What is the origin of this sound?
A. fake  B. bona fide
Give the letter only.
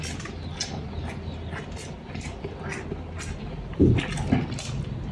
B